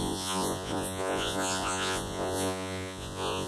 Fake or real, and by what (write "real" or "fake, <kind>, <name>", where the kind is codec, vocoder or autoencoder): fake, vocoder, Vocos